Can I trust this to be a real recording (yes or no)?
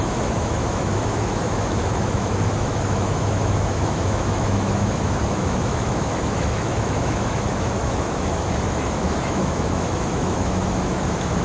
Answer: no